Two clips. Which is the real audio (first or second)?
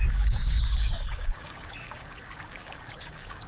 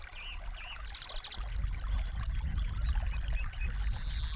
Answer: second